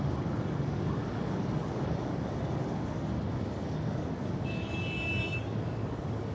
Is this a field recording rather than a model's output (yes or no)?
no